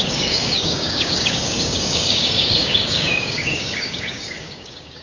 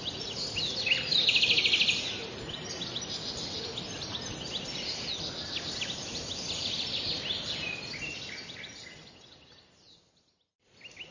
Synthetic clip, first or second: first